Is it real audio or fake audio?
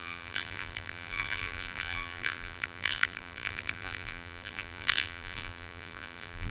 fake